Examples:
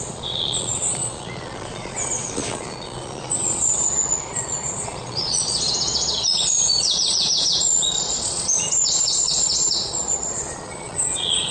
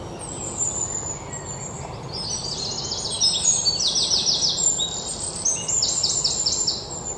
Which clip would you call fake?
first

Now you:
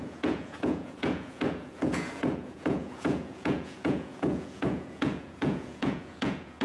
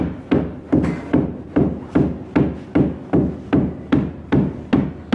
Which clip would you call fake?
first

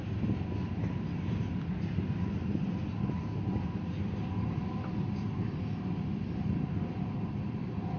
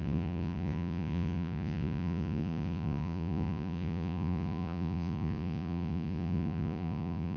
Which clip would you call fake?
second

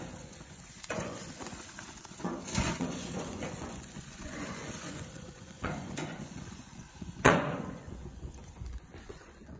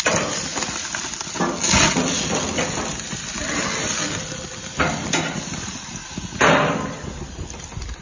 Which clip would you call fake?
first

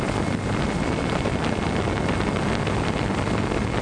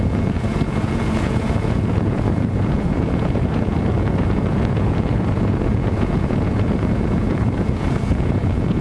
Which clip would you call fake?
second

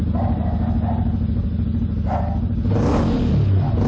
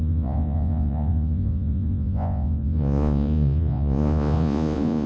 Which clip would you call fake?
second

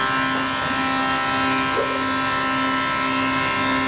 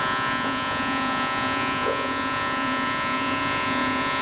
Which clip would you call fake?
second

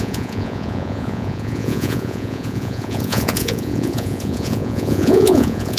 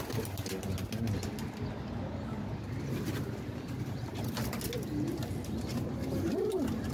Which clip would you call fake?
first